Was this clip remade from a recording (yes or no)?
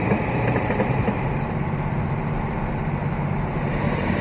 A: yes